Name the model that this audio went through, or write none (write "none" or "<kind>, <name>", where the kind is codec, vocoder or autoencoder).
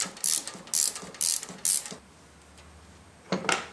none